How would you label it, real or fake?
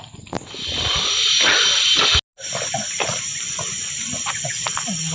real